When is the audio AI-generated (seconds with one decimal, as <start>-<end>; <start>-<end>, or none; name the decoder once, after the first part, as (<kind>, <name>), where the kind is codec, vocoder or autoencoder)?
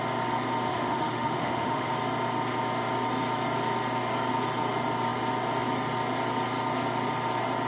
0.7-1.9 (autoencoder, DAC-VAE)